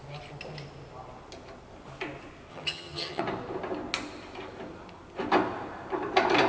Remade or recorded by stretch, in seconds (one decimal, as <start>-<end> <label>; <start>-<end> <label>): 0.0-2.5 recorded; 2.5-3.2 remade; 3.2-6.5 recorded